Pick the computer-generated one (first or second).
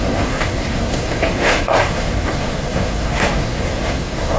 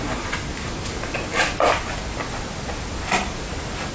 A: first